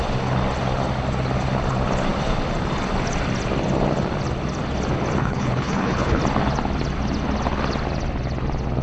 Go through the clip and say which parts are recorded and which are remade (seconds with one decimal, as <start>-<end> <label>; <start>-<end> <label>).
0.0-5.2 recorded; 5.2-6.2 remade; 6.2-8.8 recorded

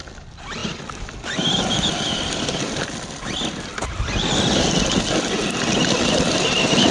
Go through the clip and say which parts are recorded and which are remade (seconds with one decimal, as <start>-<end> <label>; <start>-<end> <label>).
0.0-6.9 recorded